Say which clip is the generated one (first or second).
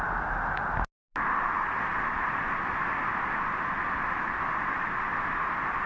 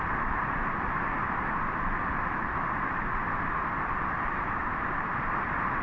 second